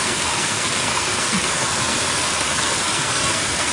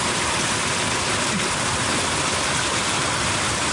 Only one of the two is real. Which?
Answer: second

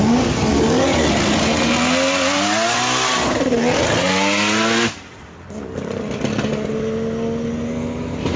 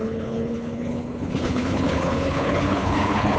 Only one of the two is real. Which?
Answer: first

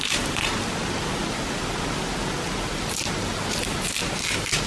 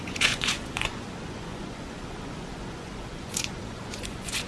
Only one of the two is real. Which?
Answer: first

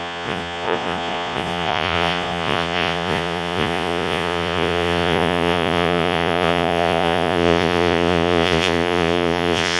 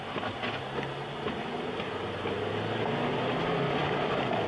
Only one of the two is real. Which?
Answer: second